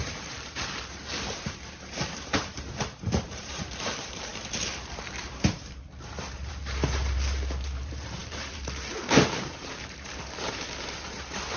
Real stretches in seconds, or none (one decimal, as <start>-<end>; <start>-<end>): 4.3-5.2